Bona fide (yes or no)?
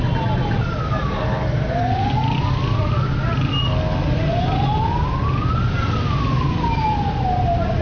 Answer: yes